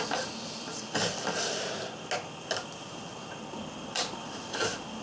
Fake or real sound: real